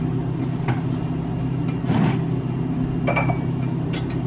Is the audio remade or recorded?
recorded